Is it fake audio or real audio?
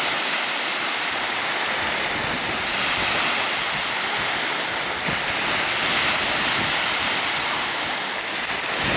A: real